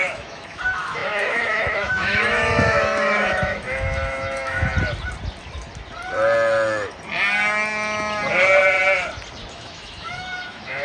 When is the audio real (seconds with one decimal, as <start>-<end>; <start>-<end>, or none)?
4.7-9.5